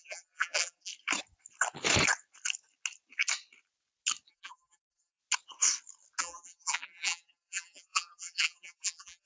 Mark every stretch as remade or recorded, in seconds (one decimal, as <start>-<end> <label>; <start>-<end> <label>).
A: 0.0-0.9 remade; 0.9-4.3 recorded; 4.3-5.2 remade; 5.2-6.2 recorded; 6.2-9.3 remade